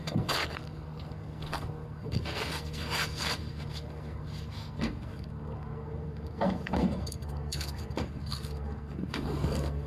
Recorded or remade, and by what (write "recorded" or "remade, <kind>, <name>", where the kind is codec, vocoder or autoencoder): remade, codec, SNAC